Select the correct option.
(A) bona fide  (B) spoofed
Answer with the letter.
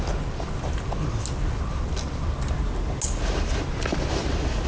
A